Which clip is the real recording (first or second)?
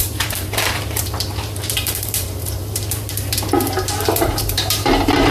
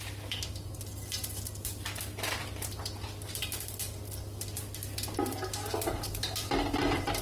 second